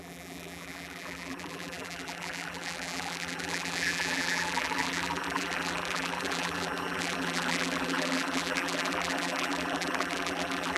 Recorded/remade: remade